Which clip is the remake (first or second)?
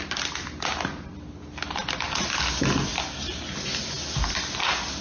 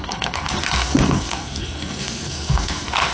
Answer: second